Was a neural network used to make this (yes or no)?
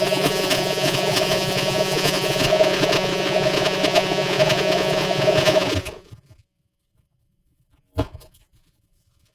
yes